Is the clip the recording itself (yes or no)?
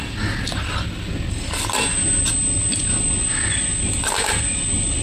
yes